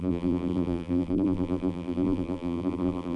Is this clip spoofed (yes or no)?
yes